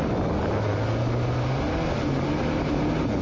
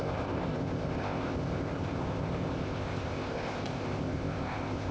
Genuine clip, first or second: first